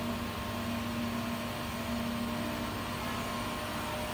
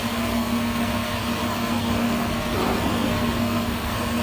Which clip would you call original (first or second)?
first